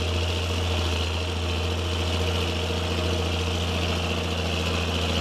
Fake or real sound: real